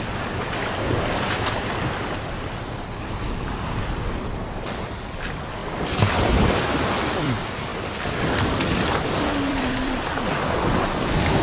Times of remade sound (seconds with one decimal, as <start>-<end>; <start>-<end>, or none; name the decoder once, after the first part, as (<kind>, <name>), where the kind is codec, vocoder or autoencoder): 0.0-5.6 (vocoder, BigVGAN v2); 7.1-7.7; 9.5-11.4